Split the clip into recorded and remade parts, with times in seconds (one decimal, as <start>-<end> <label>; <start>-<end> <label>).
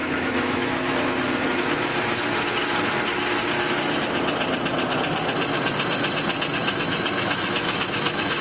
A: 0.0-0.9 remade; 0.9-6.6 recorded; 6.6-8.4 remade